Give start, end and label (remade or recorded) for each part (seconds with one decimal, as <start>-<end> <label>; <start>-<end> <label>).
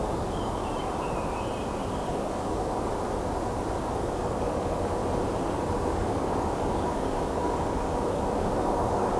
0.0-0.6 remade; 0.6-2.1 recorded; 2.1-2.9 remade; 2.9-3.8 recorded; 3.8-5.0 remade; 5.0-5.9 recorded; 5.9-9.2 remade